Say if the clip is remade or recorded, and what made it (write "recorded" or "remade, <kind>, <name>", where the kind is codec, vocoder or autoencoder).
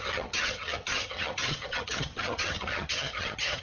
remade, vocoder, HiFi-GAN